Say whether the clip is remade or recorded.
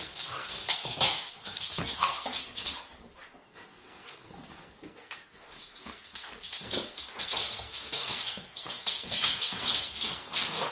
remade